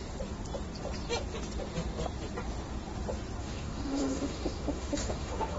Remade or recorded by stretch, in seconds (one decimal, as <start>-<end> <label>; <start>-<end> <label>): 0.0-3.4 recorded; 3.4-5.6 remade